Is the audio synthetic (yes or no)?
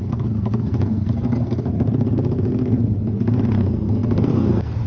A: yes